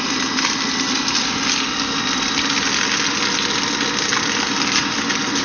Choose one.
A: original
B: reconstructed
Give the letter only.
A